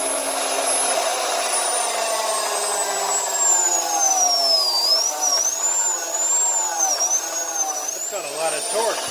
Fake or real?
real